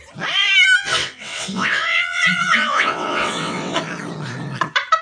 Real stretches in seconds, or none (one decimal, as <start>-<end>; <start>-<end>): 0.0-0.8; 3.8-5.0